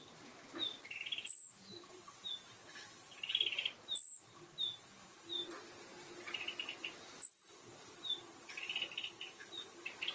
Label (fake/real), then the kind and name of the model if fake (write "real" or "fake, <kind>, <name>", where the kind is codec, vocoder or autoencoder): real